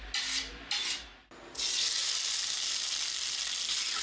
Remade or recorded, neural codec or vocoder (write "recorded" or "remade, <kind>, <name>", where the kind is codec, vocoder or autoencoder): recorded